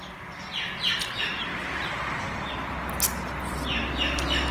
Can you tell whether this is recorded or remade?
recorded